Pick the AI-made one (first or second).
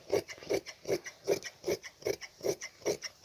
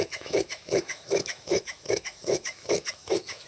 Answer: second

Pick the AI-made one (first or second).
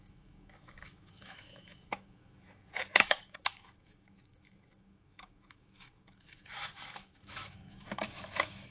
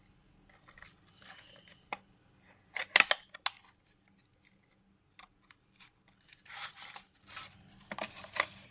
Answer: first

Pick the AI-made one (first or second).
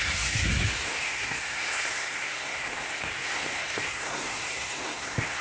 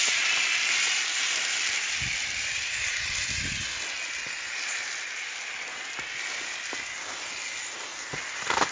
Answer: first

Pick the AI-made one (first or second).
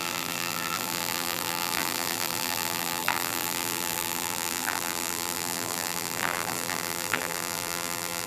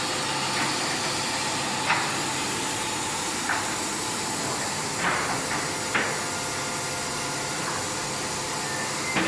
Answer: first